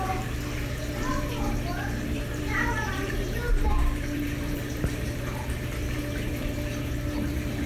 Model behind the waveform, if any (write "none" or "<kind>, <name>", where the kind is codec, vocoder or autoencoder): vocoder, BigVGAN v2